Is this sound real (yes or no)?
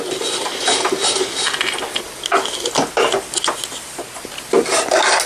yes